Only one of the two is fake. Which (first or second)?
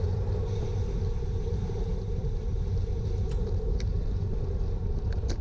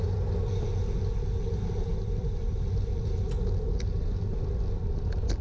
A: first